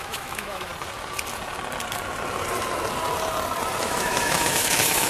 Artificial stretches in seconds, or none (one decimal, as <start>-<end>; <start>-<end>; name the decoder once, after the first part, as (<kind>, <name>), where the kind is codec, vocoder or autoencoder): 0.0-0.7 (autoencoder, DAC-VAE); 3.8-5.1